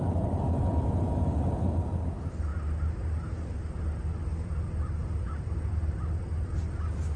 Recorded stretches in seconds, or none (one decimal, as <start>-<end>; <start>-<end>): 0.0-7.2